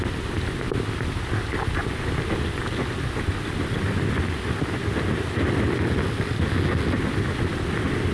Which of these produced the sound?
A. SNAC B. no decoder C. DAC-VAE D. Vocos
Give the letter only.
B